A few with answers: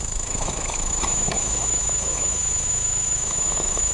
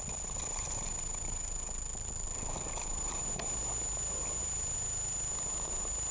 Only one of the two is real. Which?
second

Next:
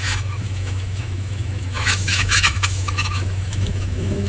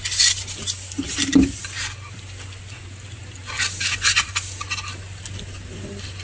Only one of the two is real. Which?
second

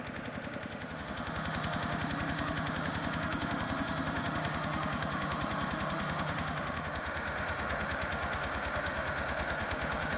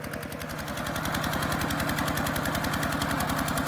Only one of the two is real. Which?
second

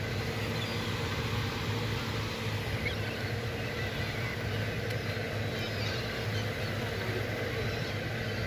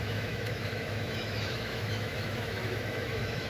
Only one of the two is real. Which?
first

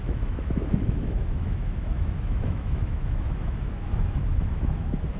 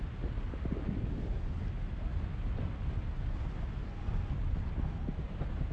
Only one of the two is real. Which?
second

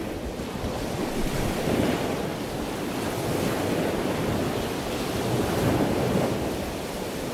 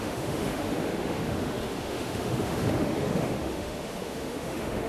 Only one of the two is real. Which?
first